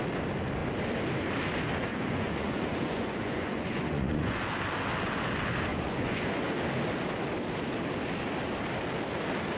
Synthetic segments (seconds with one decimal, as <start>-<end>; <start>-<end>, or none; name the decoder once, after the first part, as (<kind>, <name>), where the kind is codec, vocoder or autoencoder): 1.9-4.4 (vocoder, Vocos); 5.7-6.4

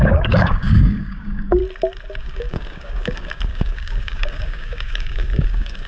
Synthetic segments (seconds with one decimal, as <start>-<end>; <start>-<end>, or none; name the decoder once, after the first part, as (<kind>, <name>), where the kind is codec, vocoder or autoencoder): 0.0-1.6 (codec, DAC); 2.2-5.9

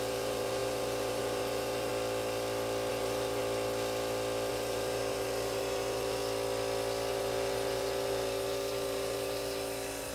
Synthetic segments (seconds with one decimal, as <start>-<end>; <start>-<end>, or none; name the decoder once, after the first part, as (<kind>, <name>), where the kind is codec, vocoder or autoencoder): 0.0-1.9 (vocoder, BigVGAN v2); 2.9-3.4; 4.5-6.2; 7.1-10.1

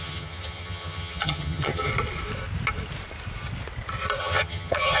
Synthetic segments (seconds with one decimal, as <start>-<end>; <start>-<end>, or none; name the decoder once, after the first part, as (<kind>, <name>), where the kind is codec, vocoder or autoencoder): 0.0-1.9 (vocoder, HiFi-GAN); 4.2-5.0